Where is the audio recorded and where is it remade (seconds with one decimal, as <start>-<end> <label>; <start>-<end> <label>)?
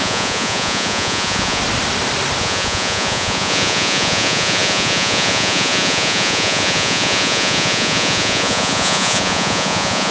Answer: 0.0-1.6 remade; 1.6-2.4 recorded; 2.4-10.1 remade